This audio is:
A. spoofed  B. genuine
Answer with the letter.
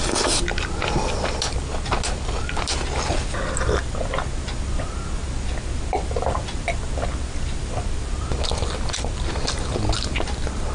B